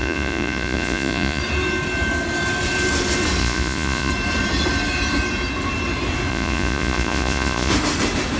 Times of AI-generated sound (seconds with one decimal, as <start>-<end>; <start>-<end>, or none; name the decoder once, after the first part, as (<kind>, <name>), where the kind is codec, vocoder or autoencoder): 0.0-1.4 (vocoder, Vocos); 3.4-4.1; 6.3-7.7

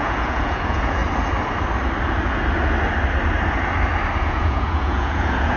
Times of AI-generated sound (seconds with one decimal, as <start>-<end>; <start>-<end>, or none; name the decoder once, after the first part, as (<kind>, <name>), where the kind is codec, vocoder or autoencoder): 0.0-1.0 (vocoder, Vocos); 4.2-5.6

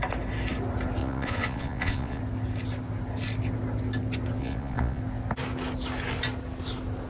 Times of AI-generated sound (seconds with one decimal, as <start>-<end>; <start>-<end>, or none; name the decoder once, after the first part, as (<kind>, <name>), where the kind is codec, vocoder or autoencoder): 1.0-2.2 (vocoder, Vocos); 4.4-5.0

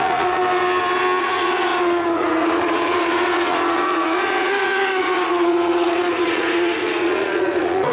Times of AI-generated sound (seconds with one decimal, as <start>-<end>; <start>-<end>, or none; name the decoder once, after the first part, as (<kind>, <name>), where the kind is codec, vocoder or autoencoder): 0.0-0.4 (vocoder, Vocos); 1.2-7.9